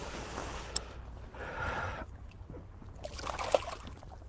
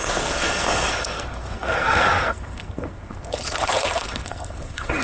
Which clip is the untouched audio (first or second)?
first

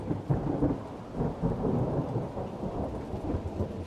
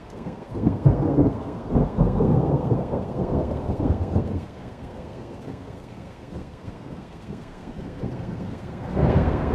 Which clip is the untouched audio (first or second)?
first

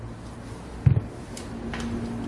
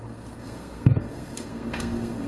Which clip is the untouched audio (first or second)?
first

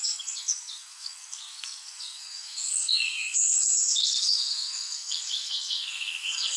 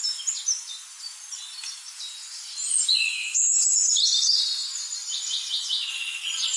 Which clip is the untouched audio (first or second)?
second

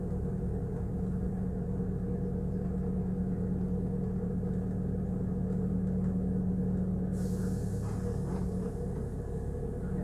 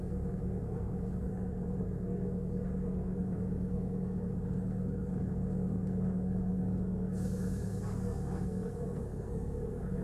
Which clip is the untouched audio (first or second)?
first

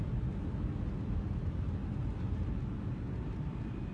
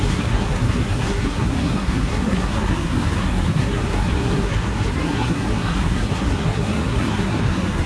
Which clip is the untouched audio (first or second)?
first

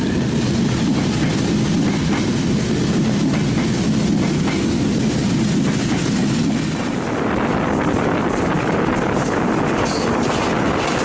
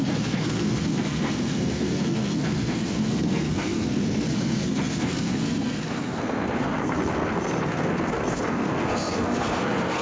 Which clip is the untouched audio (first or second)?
first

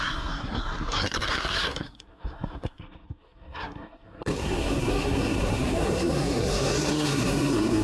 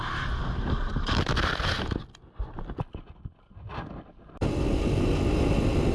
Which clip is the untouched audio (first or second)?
second